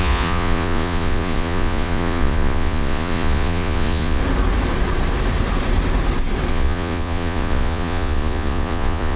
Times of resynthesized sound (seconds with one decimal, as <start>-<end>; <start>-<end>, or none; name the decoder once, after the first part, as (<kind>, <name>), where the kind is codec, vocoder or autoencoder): 0.0-4.2 (vocoder, Vocos); 6.5-9.2